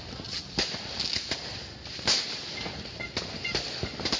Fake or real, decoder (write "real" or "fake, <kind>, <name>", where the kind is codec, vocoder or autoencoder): real